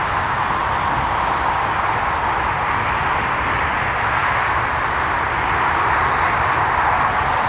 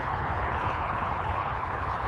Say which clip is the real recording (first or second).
first